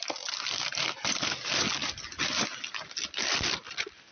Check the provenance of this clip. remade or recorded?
recorded